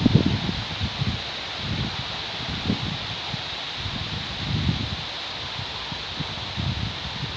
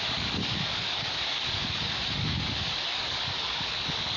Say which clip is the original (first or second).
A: first